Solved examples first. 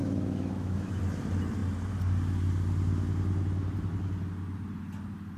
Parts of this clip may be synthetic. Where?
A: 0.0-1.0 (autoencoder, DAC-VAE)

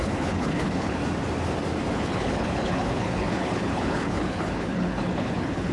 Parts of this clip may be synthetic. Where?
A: 0.0-1.0 (codec, HILCodec); 1.9-5.7

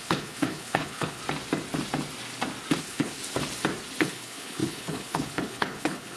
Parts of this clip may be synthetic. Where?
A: 0.0-1.2 (codec, HILCodec); 2.8-3.2; 4.0-6.2

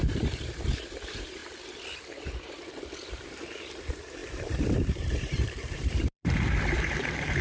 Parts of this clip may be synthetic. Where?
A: 0.0-1.4 (vocoder, BigVGAN v2); 3.1-7.4

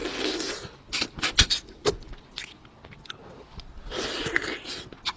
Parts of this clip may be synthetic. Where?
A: none